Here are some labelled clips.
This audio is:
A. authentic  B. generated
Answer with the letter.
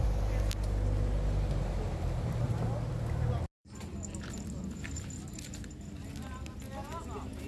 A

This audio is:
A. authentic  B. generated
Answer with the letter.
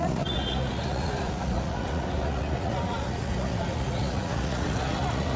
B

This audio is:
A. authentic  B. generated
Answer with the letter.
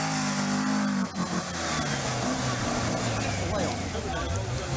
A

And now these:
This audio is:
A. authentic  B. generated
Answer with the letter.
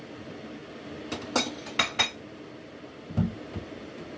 A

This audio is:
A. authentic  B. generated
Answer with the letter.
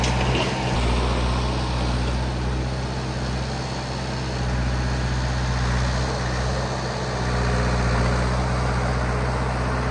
A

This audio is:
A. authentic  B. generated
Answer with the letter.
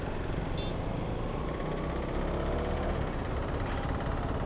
A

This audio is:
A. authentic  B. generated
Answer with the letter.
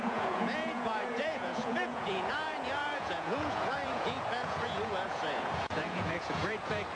B